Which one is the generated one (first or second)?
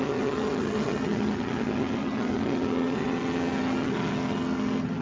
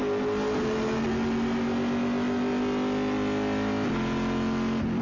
first